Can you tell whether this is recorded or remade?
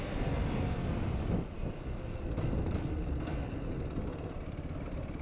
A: recorded